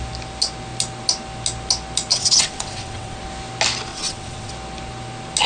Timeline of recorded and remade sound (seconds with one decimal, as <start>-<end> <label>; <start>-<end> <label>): 0.0-2.1 recorded; 2.1-3.2 remade; 3.2-3.9 recorded; 3.9-4.5 remade; 4.5-5.5 recorded